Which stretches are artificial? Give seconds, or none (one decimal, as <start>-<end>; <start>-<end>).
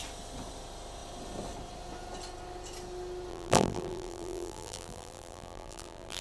3.3-6.2